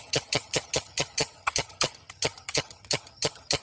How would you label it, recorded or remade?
remade